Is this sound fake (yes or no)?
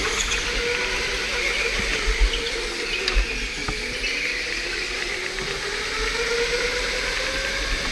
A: no